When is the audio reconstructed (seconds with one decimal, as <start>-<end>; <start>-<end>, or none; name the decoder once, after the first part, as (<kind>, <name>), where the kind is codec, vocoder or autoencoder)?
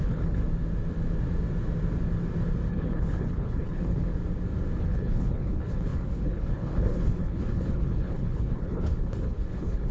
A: 0.0-0.4 (codec, HILCodec); 2.7-4.1; 4.8-9.9